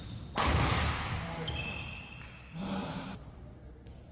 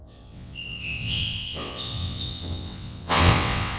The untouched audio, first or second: first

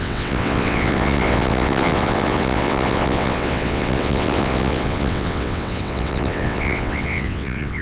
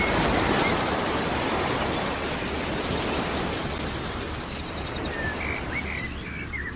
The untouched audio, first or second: second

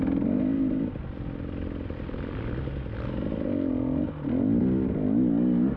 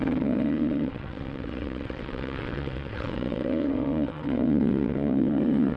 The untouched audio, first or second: first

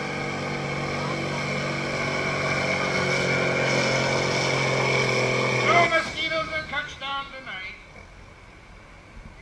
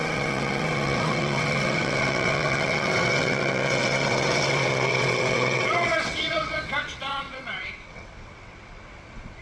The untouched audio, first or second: first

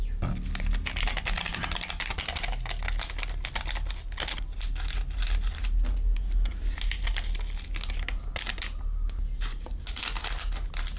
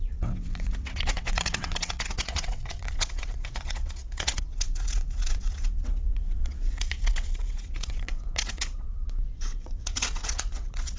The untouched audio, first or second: first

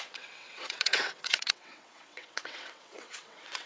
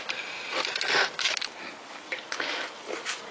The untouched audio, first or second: second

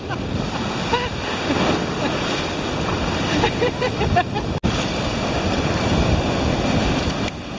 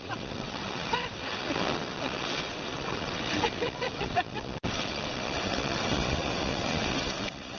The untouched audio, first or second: first